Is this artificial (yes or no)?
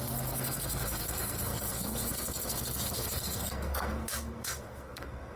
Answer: yes